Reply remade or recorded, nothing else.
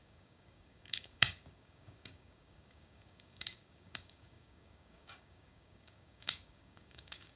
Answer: remade